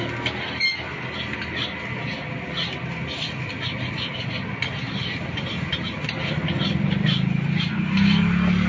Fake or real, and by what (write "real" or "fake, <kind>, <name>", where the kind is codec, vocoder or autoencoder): real